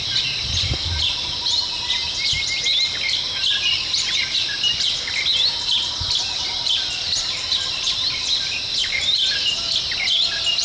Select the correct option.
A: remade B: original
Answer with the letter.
B